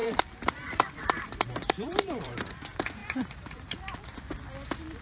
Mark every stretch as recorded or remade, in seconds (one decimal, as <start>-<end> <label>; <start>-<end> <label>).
0.0-2.5 remade; 2.5-3.0 recorded; 3.0-3.8 remade; 3.8-5.0 recorded